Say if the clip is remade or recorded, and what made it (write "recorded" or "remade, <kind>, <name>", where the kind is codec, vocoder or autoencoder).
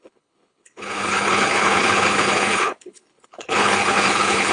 remade, codec, HILCodec